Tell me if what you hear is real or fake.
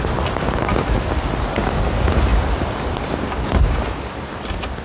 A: real